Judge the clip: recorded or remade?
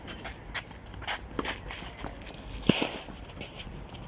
remade